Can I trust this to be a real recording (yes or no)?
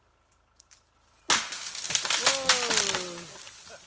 yes